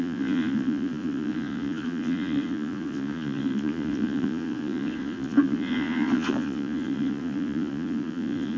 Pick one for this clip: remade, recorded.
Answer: remade